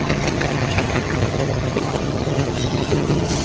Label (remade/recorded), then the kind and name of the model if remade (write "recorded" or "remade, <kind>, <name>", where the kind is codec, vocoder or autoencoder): remade, vocoder, HiFi-GAN